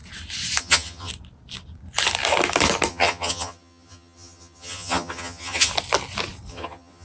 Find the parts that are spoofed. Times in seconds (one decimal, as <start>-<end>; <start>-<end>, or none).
0.6-1.1; 2.9-5.7; 6.5-7.0